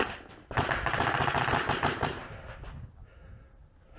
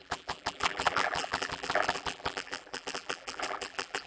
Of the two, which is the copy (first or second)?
second